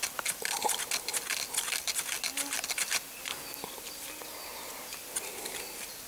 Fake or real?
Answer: real